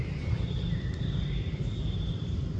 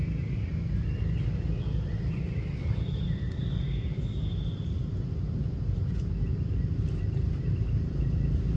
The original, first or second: second